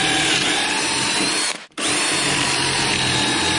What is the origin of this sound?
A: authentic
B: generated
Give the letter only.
A